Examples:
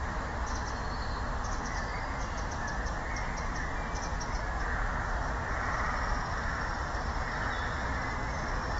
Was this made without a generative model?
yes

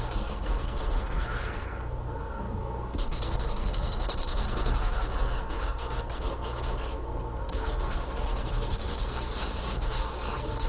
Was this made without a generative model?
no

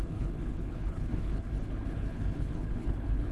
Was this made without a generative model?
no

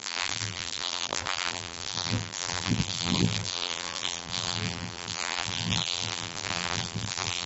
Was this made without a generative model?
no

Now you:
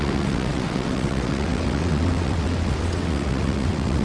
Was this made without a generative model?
no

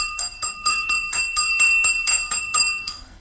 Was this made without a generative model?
no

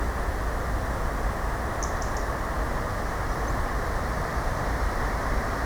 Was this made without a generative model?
yes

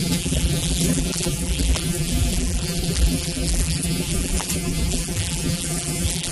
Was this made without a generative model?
no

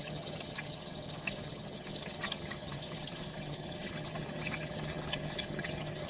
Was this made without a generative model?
no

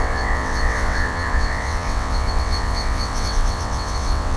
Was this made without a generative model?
no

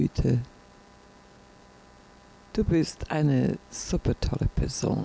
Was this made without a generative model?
yes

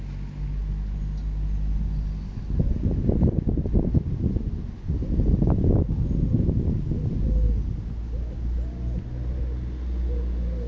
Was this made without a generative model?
yes